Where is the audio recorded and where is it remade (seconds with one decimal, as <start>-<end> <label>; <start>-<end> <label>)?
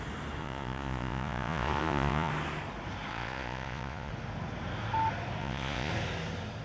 0.0-0.4 recorded; 0.4-2.3 remade; 2.3-3.1 recorded; 3.1-4.1 remade; 4.1-5.4 recorded; 5.4-5.9 remade; 5.9-6.6 recorded